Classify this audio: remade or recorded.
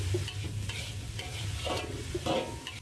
recorded